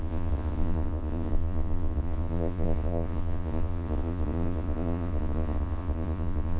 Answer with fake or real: fake